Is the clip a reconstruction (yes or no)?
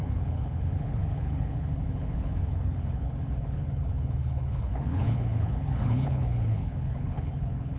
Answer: yes